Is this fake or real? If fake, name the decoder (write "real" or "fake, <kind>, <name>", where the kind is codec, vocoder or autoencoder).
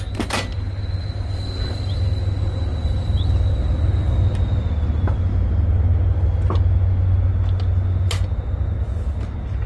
real